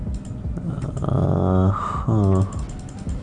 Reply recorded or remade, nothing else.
recorded